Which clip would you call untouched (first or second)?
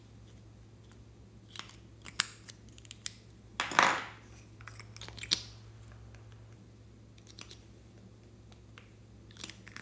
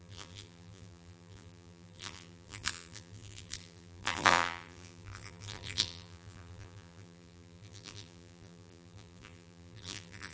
first